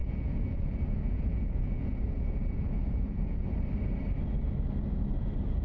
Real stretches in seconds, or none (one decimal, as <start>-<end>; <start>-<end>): 3.4-5.6